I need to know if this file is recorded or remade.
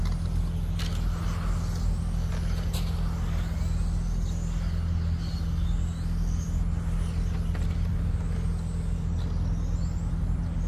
recorded